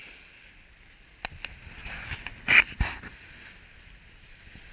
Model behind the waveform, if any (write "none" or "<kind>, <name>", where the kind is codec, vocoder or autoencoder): none